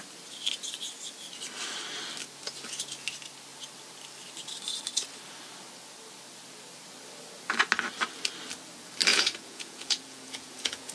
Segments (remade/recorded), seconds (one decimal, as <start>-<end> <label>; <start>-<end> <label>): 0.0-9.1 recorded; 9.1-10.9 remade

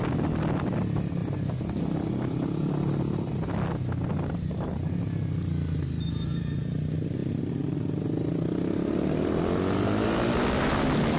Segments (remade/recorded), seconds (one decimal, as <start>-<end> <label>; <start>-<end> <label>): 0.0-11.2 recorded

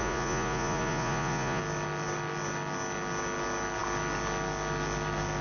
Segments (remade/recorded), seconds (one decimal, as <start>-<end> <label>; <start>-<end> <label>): 0.0-1.6 remade; 1.6-5.4 recorded

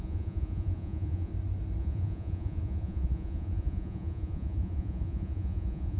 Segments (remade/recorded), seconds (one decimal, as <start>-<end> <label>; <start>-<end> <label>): 0.0-1.3 remade; 1.3-1.8 recorded; 1.8-6.0 remade

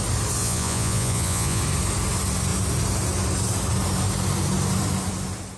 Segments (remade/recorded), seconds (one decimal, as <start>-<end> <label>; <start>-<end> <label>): 0.0-0.4 recorded; 0.4-1.6 remade; 1.6-5.6 recorded